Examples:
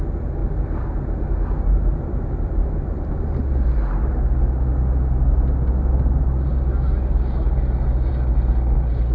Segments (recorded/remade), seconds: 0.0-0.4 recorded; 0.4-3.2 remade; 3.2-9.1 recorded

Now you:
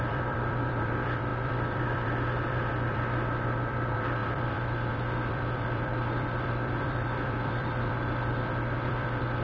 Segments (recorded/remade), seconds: 0.0-9.4 remade

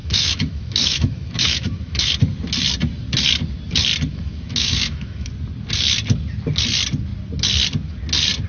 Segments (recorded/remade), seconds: 0.0-2.1 remade; 2.1-4.1 recorded; 4.1-5.3 remade; 5.3-8.5 recorded

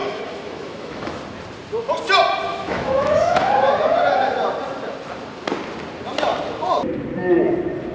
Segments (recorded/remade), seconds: 0.0-1.2 remade; 1.2-2.5 recorded; 2.5-3.5 remade; 3.5-7.9 recorded

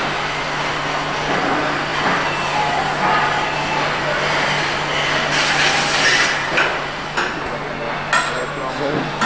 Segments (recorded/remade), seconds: 0.0-9.3 recorded

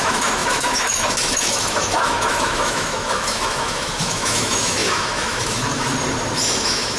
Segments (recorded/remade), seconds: 0.0-5.9 remade; 5.9-6.4 recorded; 6.4-7.0 remade

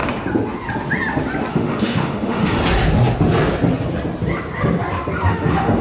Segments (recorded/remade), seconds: 0.0-1.5 recorded; 1.5-2.6 remade; 2.6-5.3 recorded; 5.3-5.8 remade

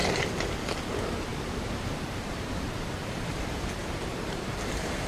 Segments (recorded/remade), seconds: 0.0-0.8 recorded; 0.8-5.1 remade